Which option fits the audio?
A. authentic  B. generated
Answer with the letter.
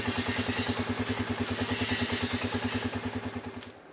A